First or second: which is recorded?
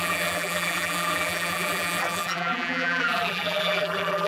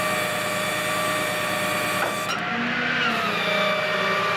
second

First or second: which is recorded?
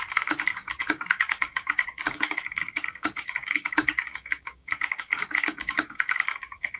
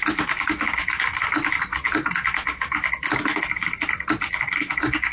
second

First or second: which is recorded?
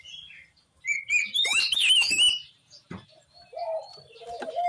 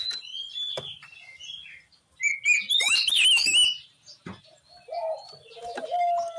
second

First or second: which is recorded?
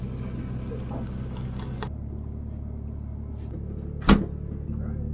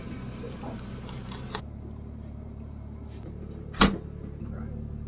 first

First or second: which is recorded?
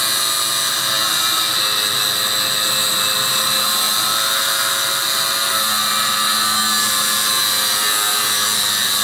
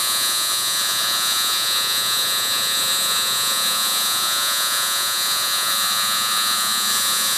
first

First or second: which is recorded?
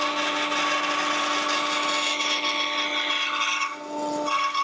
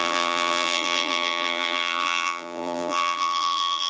first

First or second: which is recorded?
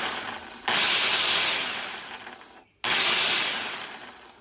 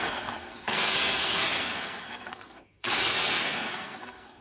first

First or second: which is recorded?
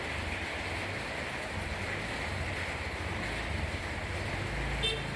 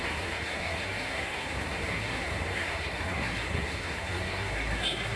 first